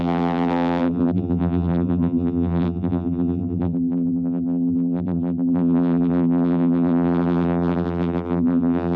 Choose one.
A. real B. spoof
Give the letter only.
B